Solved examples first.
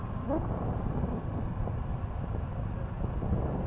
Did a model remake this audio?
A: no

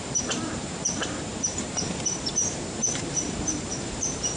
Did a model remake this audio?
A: yes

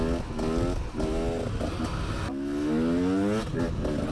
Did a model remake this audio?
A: no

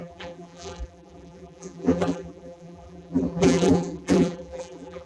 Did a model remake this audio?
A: yes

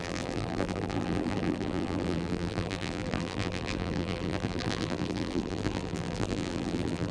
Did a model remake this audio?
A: yes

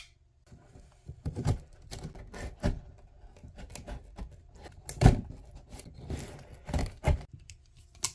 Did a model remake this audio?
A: no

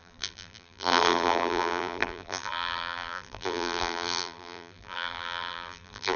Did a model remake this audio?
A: yes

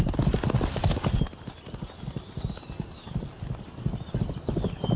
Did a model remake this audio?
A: no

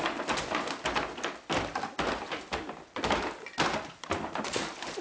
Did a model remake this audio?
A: no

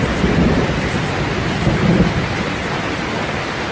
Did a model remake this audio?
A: no